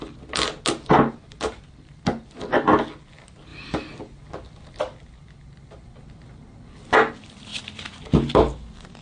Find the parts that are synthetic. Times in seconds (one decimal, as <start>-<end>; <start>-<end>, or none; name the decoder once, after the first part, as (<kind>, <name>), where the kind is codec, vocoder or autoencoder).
none